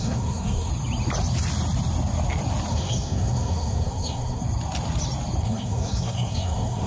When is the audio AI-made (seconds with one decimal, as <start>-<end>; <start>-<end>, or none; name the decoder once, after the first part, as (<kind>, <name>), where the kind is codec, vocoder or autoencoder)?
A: 0.0-0.7 (codec, SNAC); 2.7-4.4; 5.4-6.9